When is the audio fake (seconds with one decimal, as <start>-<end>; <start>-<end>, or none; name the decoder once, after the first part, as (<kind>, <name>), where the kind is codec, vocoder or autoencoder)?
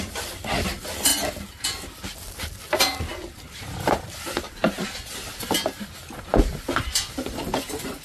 0.0-8.0 (vocoder, BigVGAN v2)